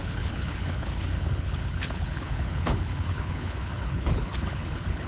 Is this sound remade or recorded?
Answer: remade